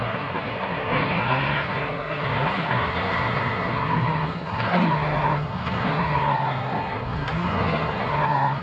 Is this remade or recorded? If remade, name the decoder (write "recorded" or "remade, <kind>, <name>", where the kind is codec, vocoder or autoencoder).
remade, codec, SNAC